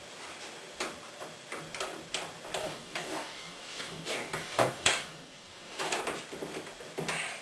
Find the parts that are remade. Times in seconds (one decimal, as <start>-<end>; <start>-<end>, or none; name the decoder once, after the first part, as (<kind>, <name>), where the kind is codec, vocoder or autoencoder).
2.6-6.0 (codec, DAC)